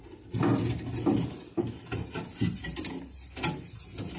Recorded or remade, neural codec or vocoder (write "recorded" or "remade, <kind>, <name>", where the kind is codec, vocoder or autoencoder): recorded